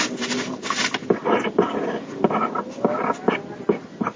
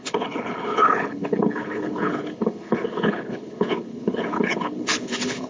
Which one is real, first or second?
first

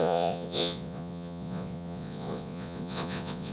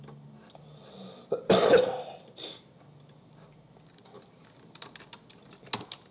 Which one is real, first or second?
second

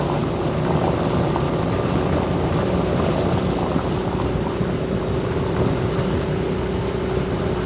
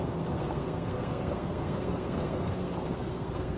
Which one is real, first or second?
first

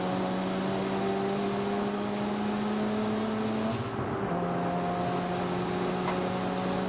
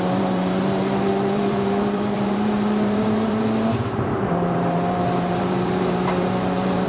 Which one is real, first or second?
first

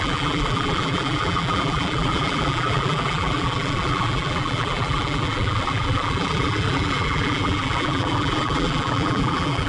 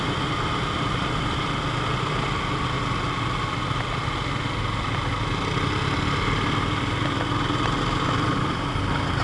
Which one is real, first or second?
second